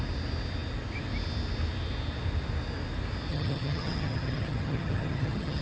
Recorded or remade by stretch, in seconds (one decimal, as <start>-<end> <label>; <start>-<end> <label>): 0.0-3.3 recorded; 3.3-5.6 remade